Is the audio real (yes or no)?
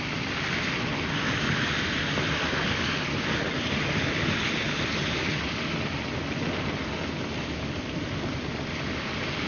yes